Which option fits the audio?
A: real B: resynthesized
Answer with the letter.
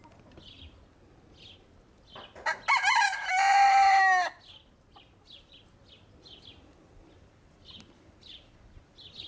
A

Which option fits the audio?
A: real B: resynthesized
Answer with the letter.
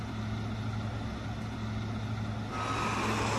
A